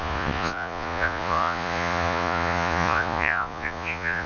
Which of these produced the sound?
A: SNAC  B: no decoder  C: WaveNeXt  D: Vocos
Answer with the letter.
D